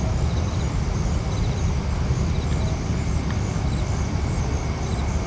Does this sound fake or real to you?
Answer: real